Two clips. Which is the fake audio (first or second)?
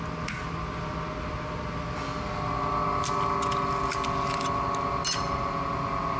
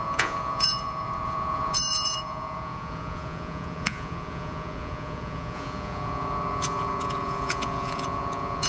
second